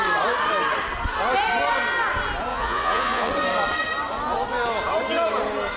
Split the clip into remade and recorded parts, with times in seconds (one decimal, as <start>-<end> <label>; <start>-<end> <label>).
0.0-2.5 recorded; 2.5-3.3 remade; 3.3-5.8 recorded